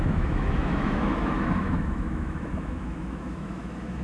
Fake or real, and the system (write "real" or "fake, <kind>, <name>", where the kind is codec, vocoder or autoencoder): fake, autoencoder, DAC-VAE